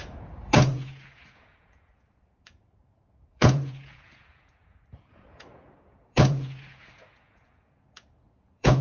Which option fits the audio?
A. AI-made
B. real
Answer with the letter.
A